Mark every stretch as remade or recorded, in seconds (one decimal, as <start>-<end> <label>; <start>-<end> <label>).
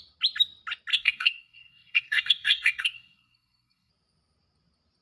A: 0.0-0.9 recorded; 0.9-3.9 remade; 3.9-5.0 recorded